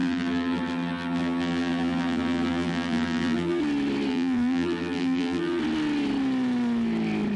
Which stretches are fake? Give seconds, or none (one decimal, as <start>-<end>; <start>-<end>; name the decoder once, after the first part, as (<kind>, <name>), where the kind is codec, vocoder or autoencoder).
0.0-3.6 (vocoder, BigVGAN v2); 4.1-5.6